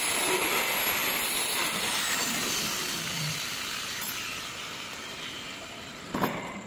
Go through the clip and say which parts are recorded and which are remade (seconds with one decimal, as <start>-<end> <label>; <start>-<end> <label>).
0.0-6.7 recorded